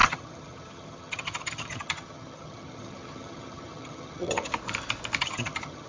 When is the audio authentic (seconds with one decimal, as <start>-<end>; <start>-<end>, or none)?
4.5-5.2